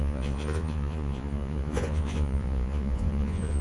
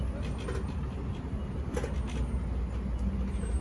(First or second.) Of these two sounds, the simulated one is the first